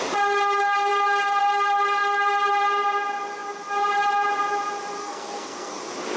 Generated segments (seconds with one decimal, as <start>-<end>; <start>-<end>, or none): 5.0-5.8